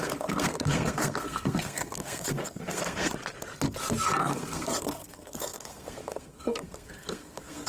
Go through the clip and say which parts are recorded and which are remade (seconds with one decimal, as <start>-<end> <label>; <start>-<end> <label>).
0.0-3.1 remade; 3.1-4.2 recorded; 4.2-7.7 remade